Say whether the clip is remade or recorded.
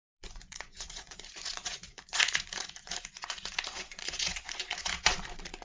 remade